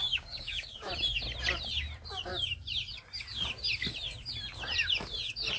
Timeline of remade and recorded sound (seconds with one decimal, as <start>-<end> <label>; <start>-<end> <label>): 0.0-0.9 remade; 0.9-5.6 recorded